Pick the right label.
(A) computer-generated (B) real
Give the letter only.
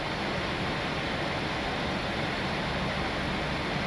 B